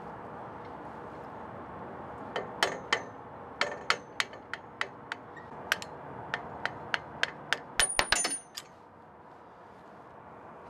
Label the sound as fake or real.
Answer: real